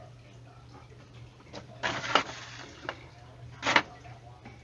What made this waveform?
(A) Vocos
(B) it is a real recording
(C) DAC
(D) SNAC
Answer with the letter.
B